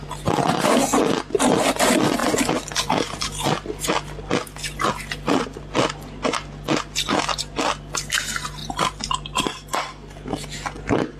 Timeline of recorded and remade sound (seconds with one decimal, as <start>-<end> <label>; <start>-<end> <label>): 0.0-11.2 recorded